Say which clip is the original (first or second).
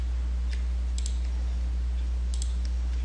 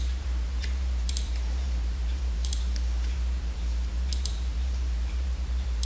first